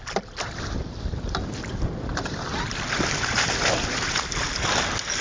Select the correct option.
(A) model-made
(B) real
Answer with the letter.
B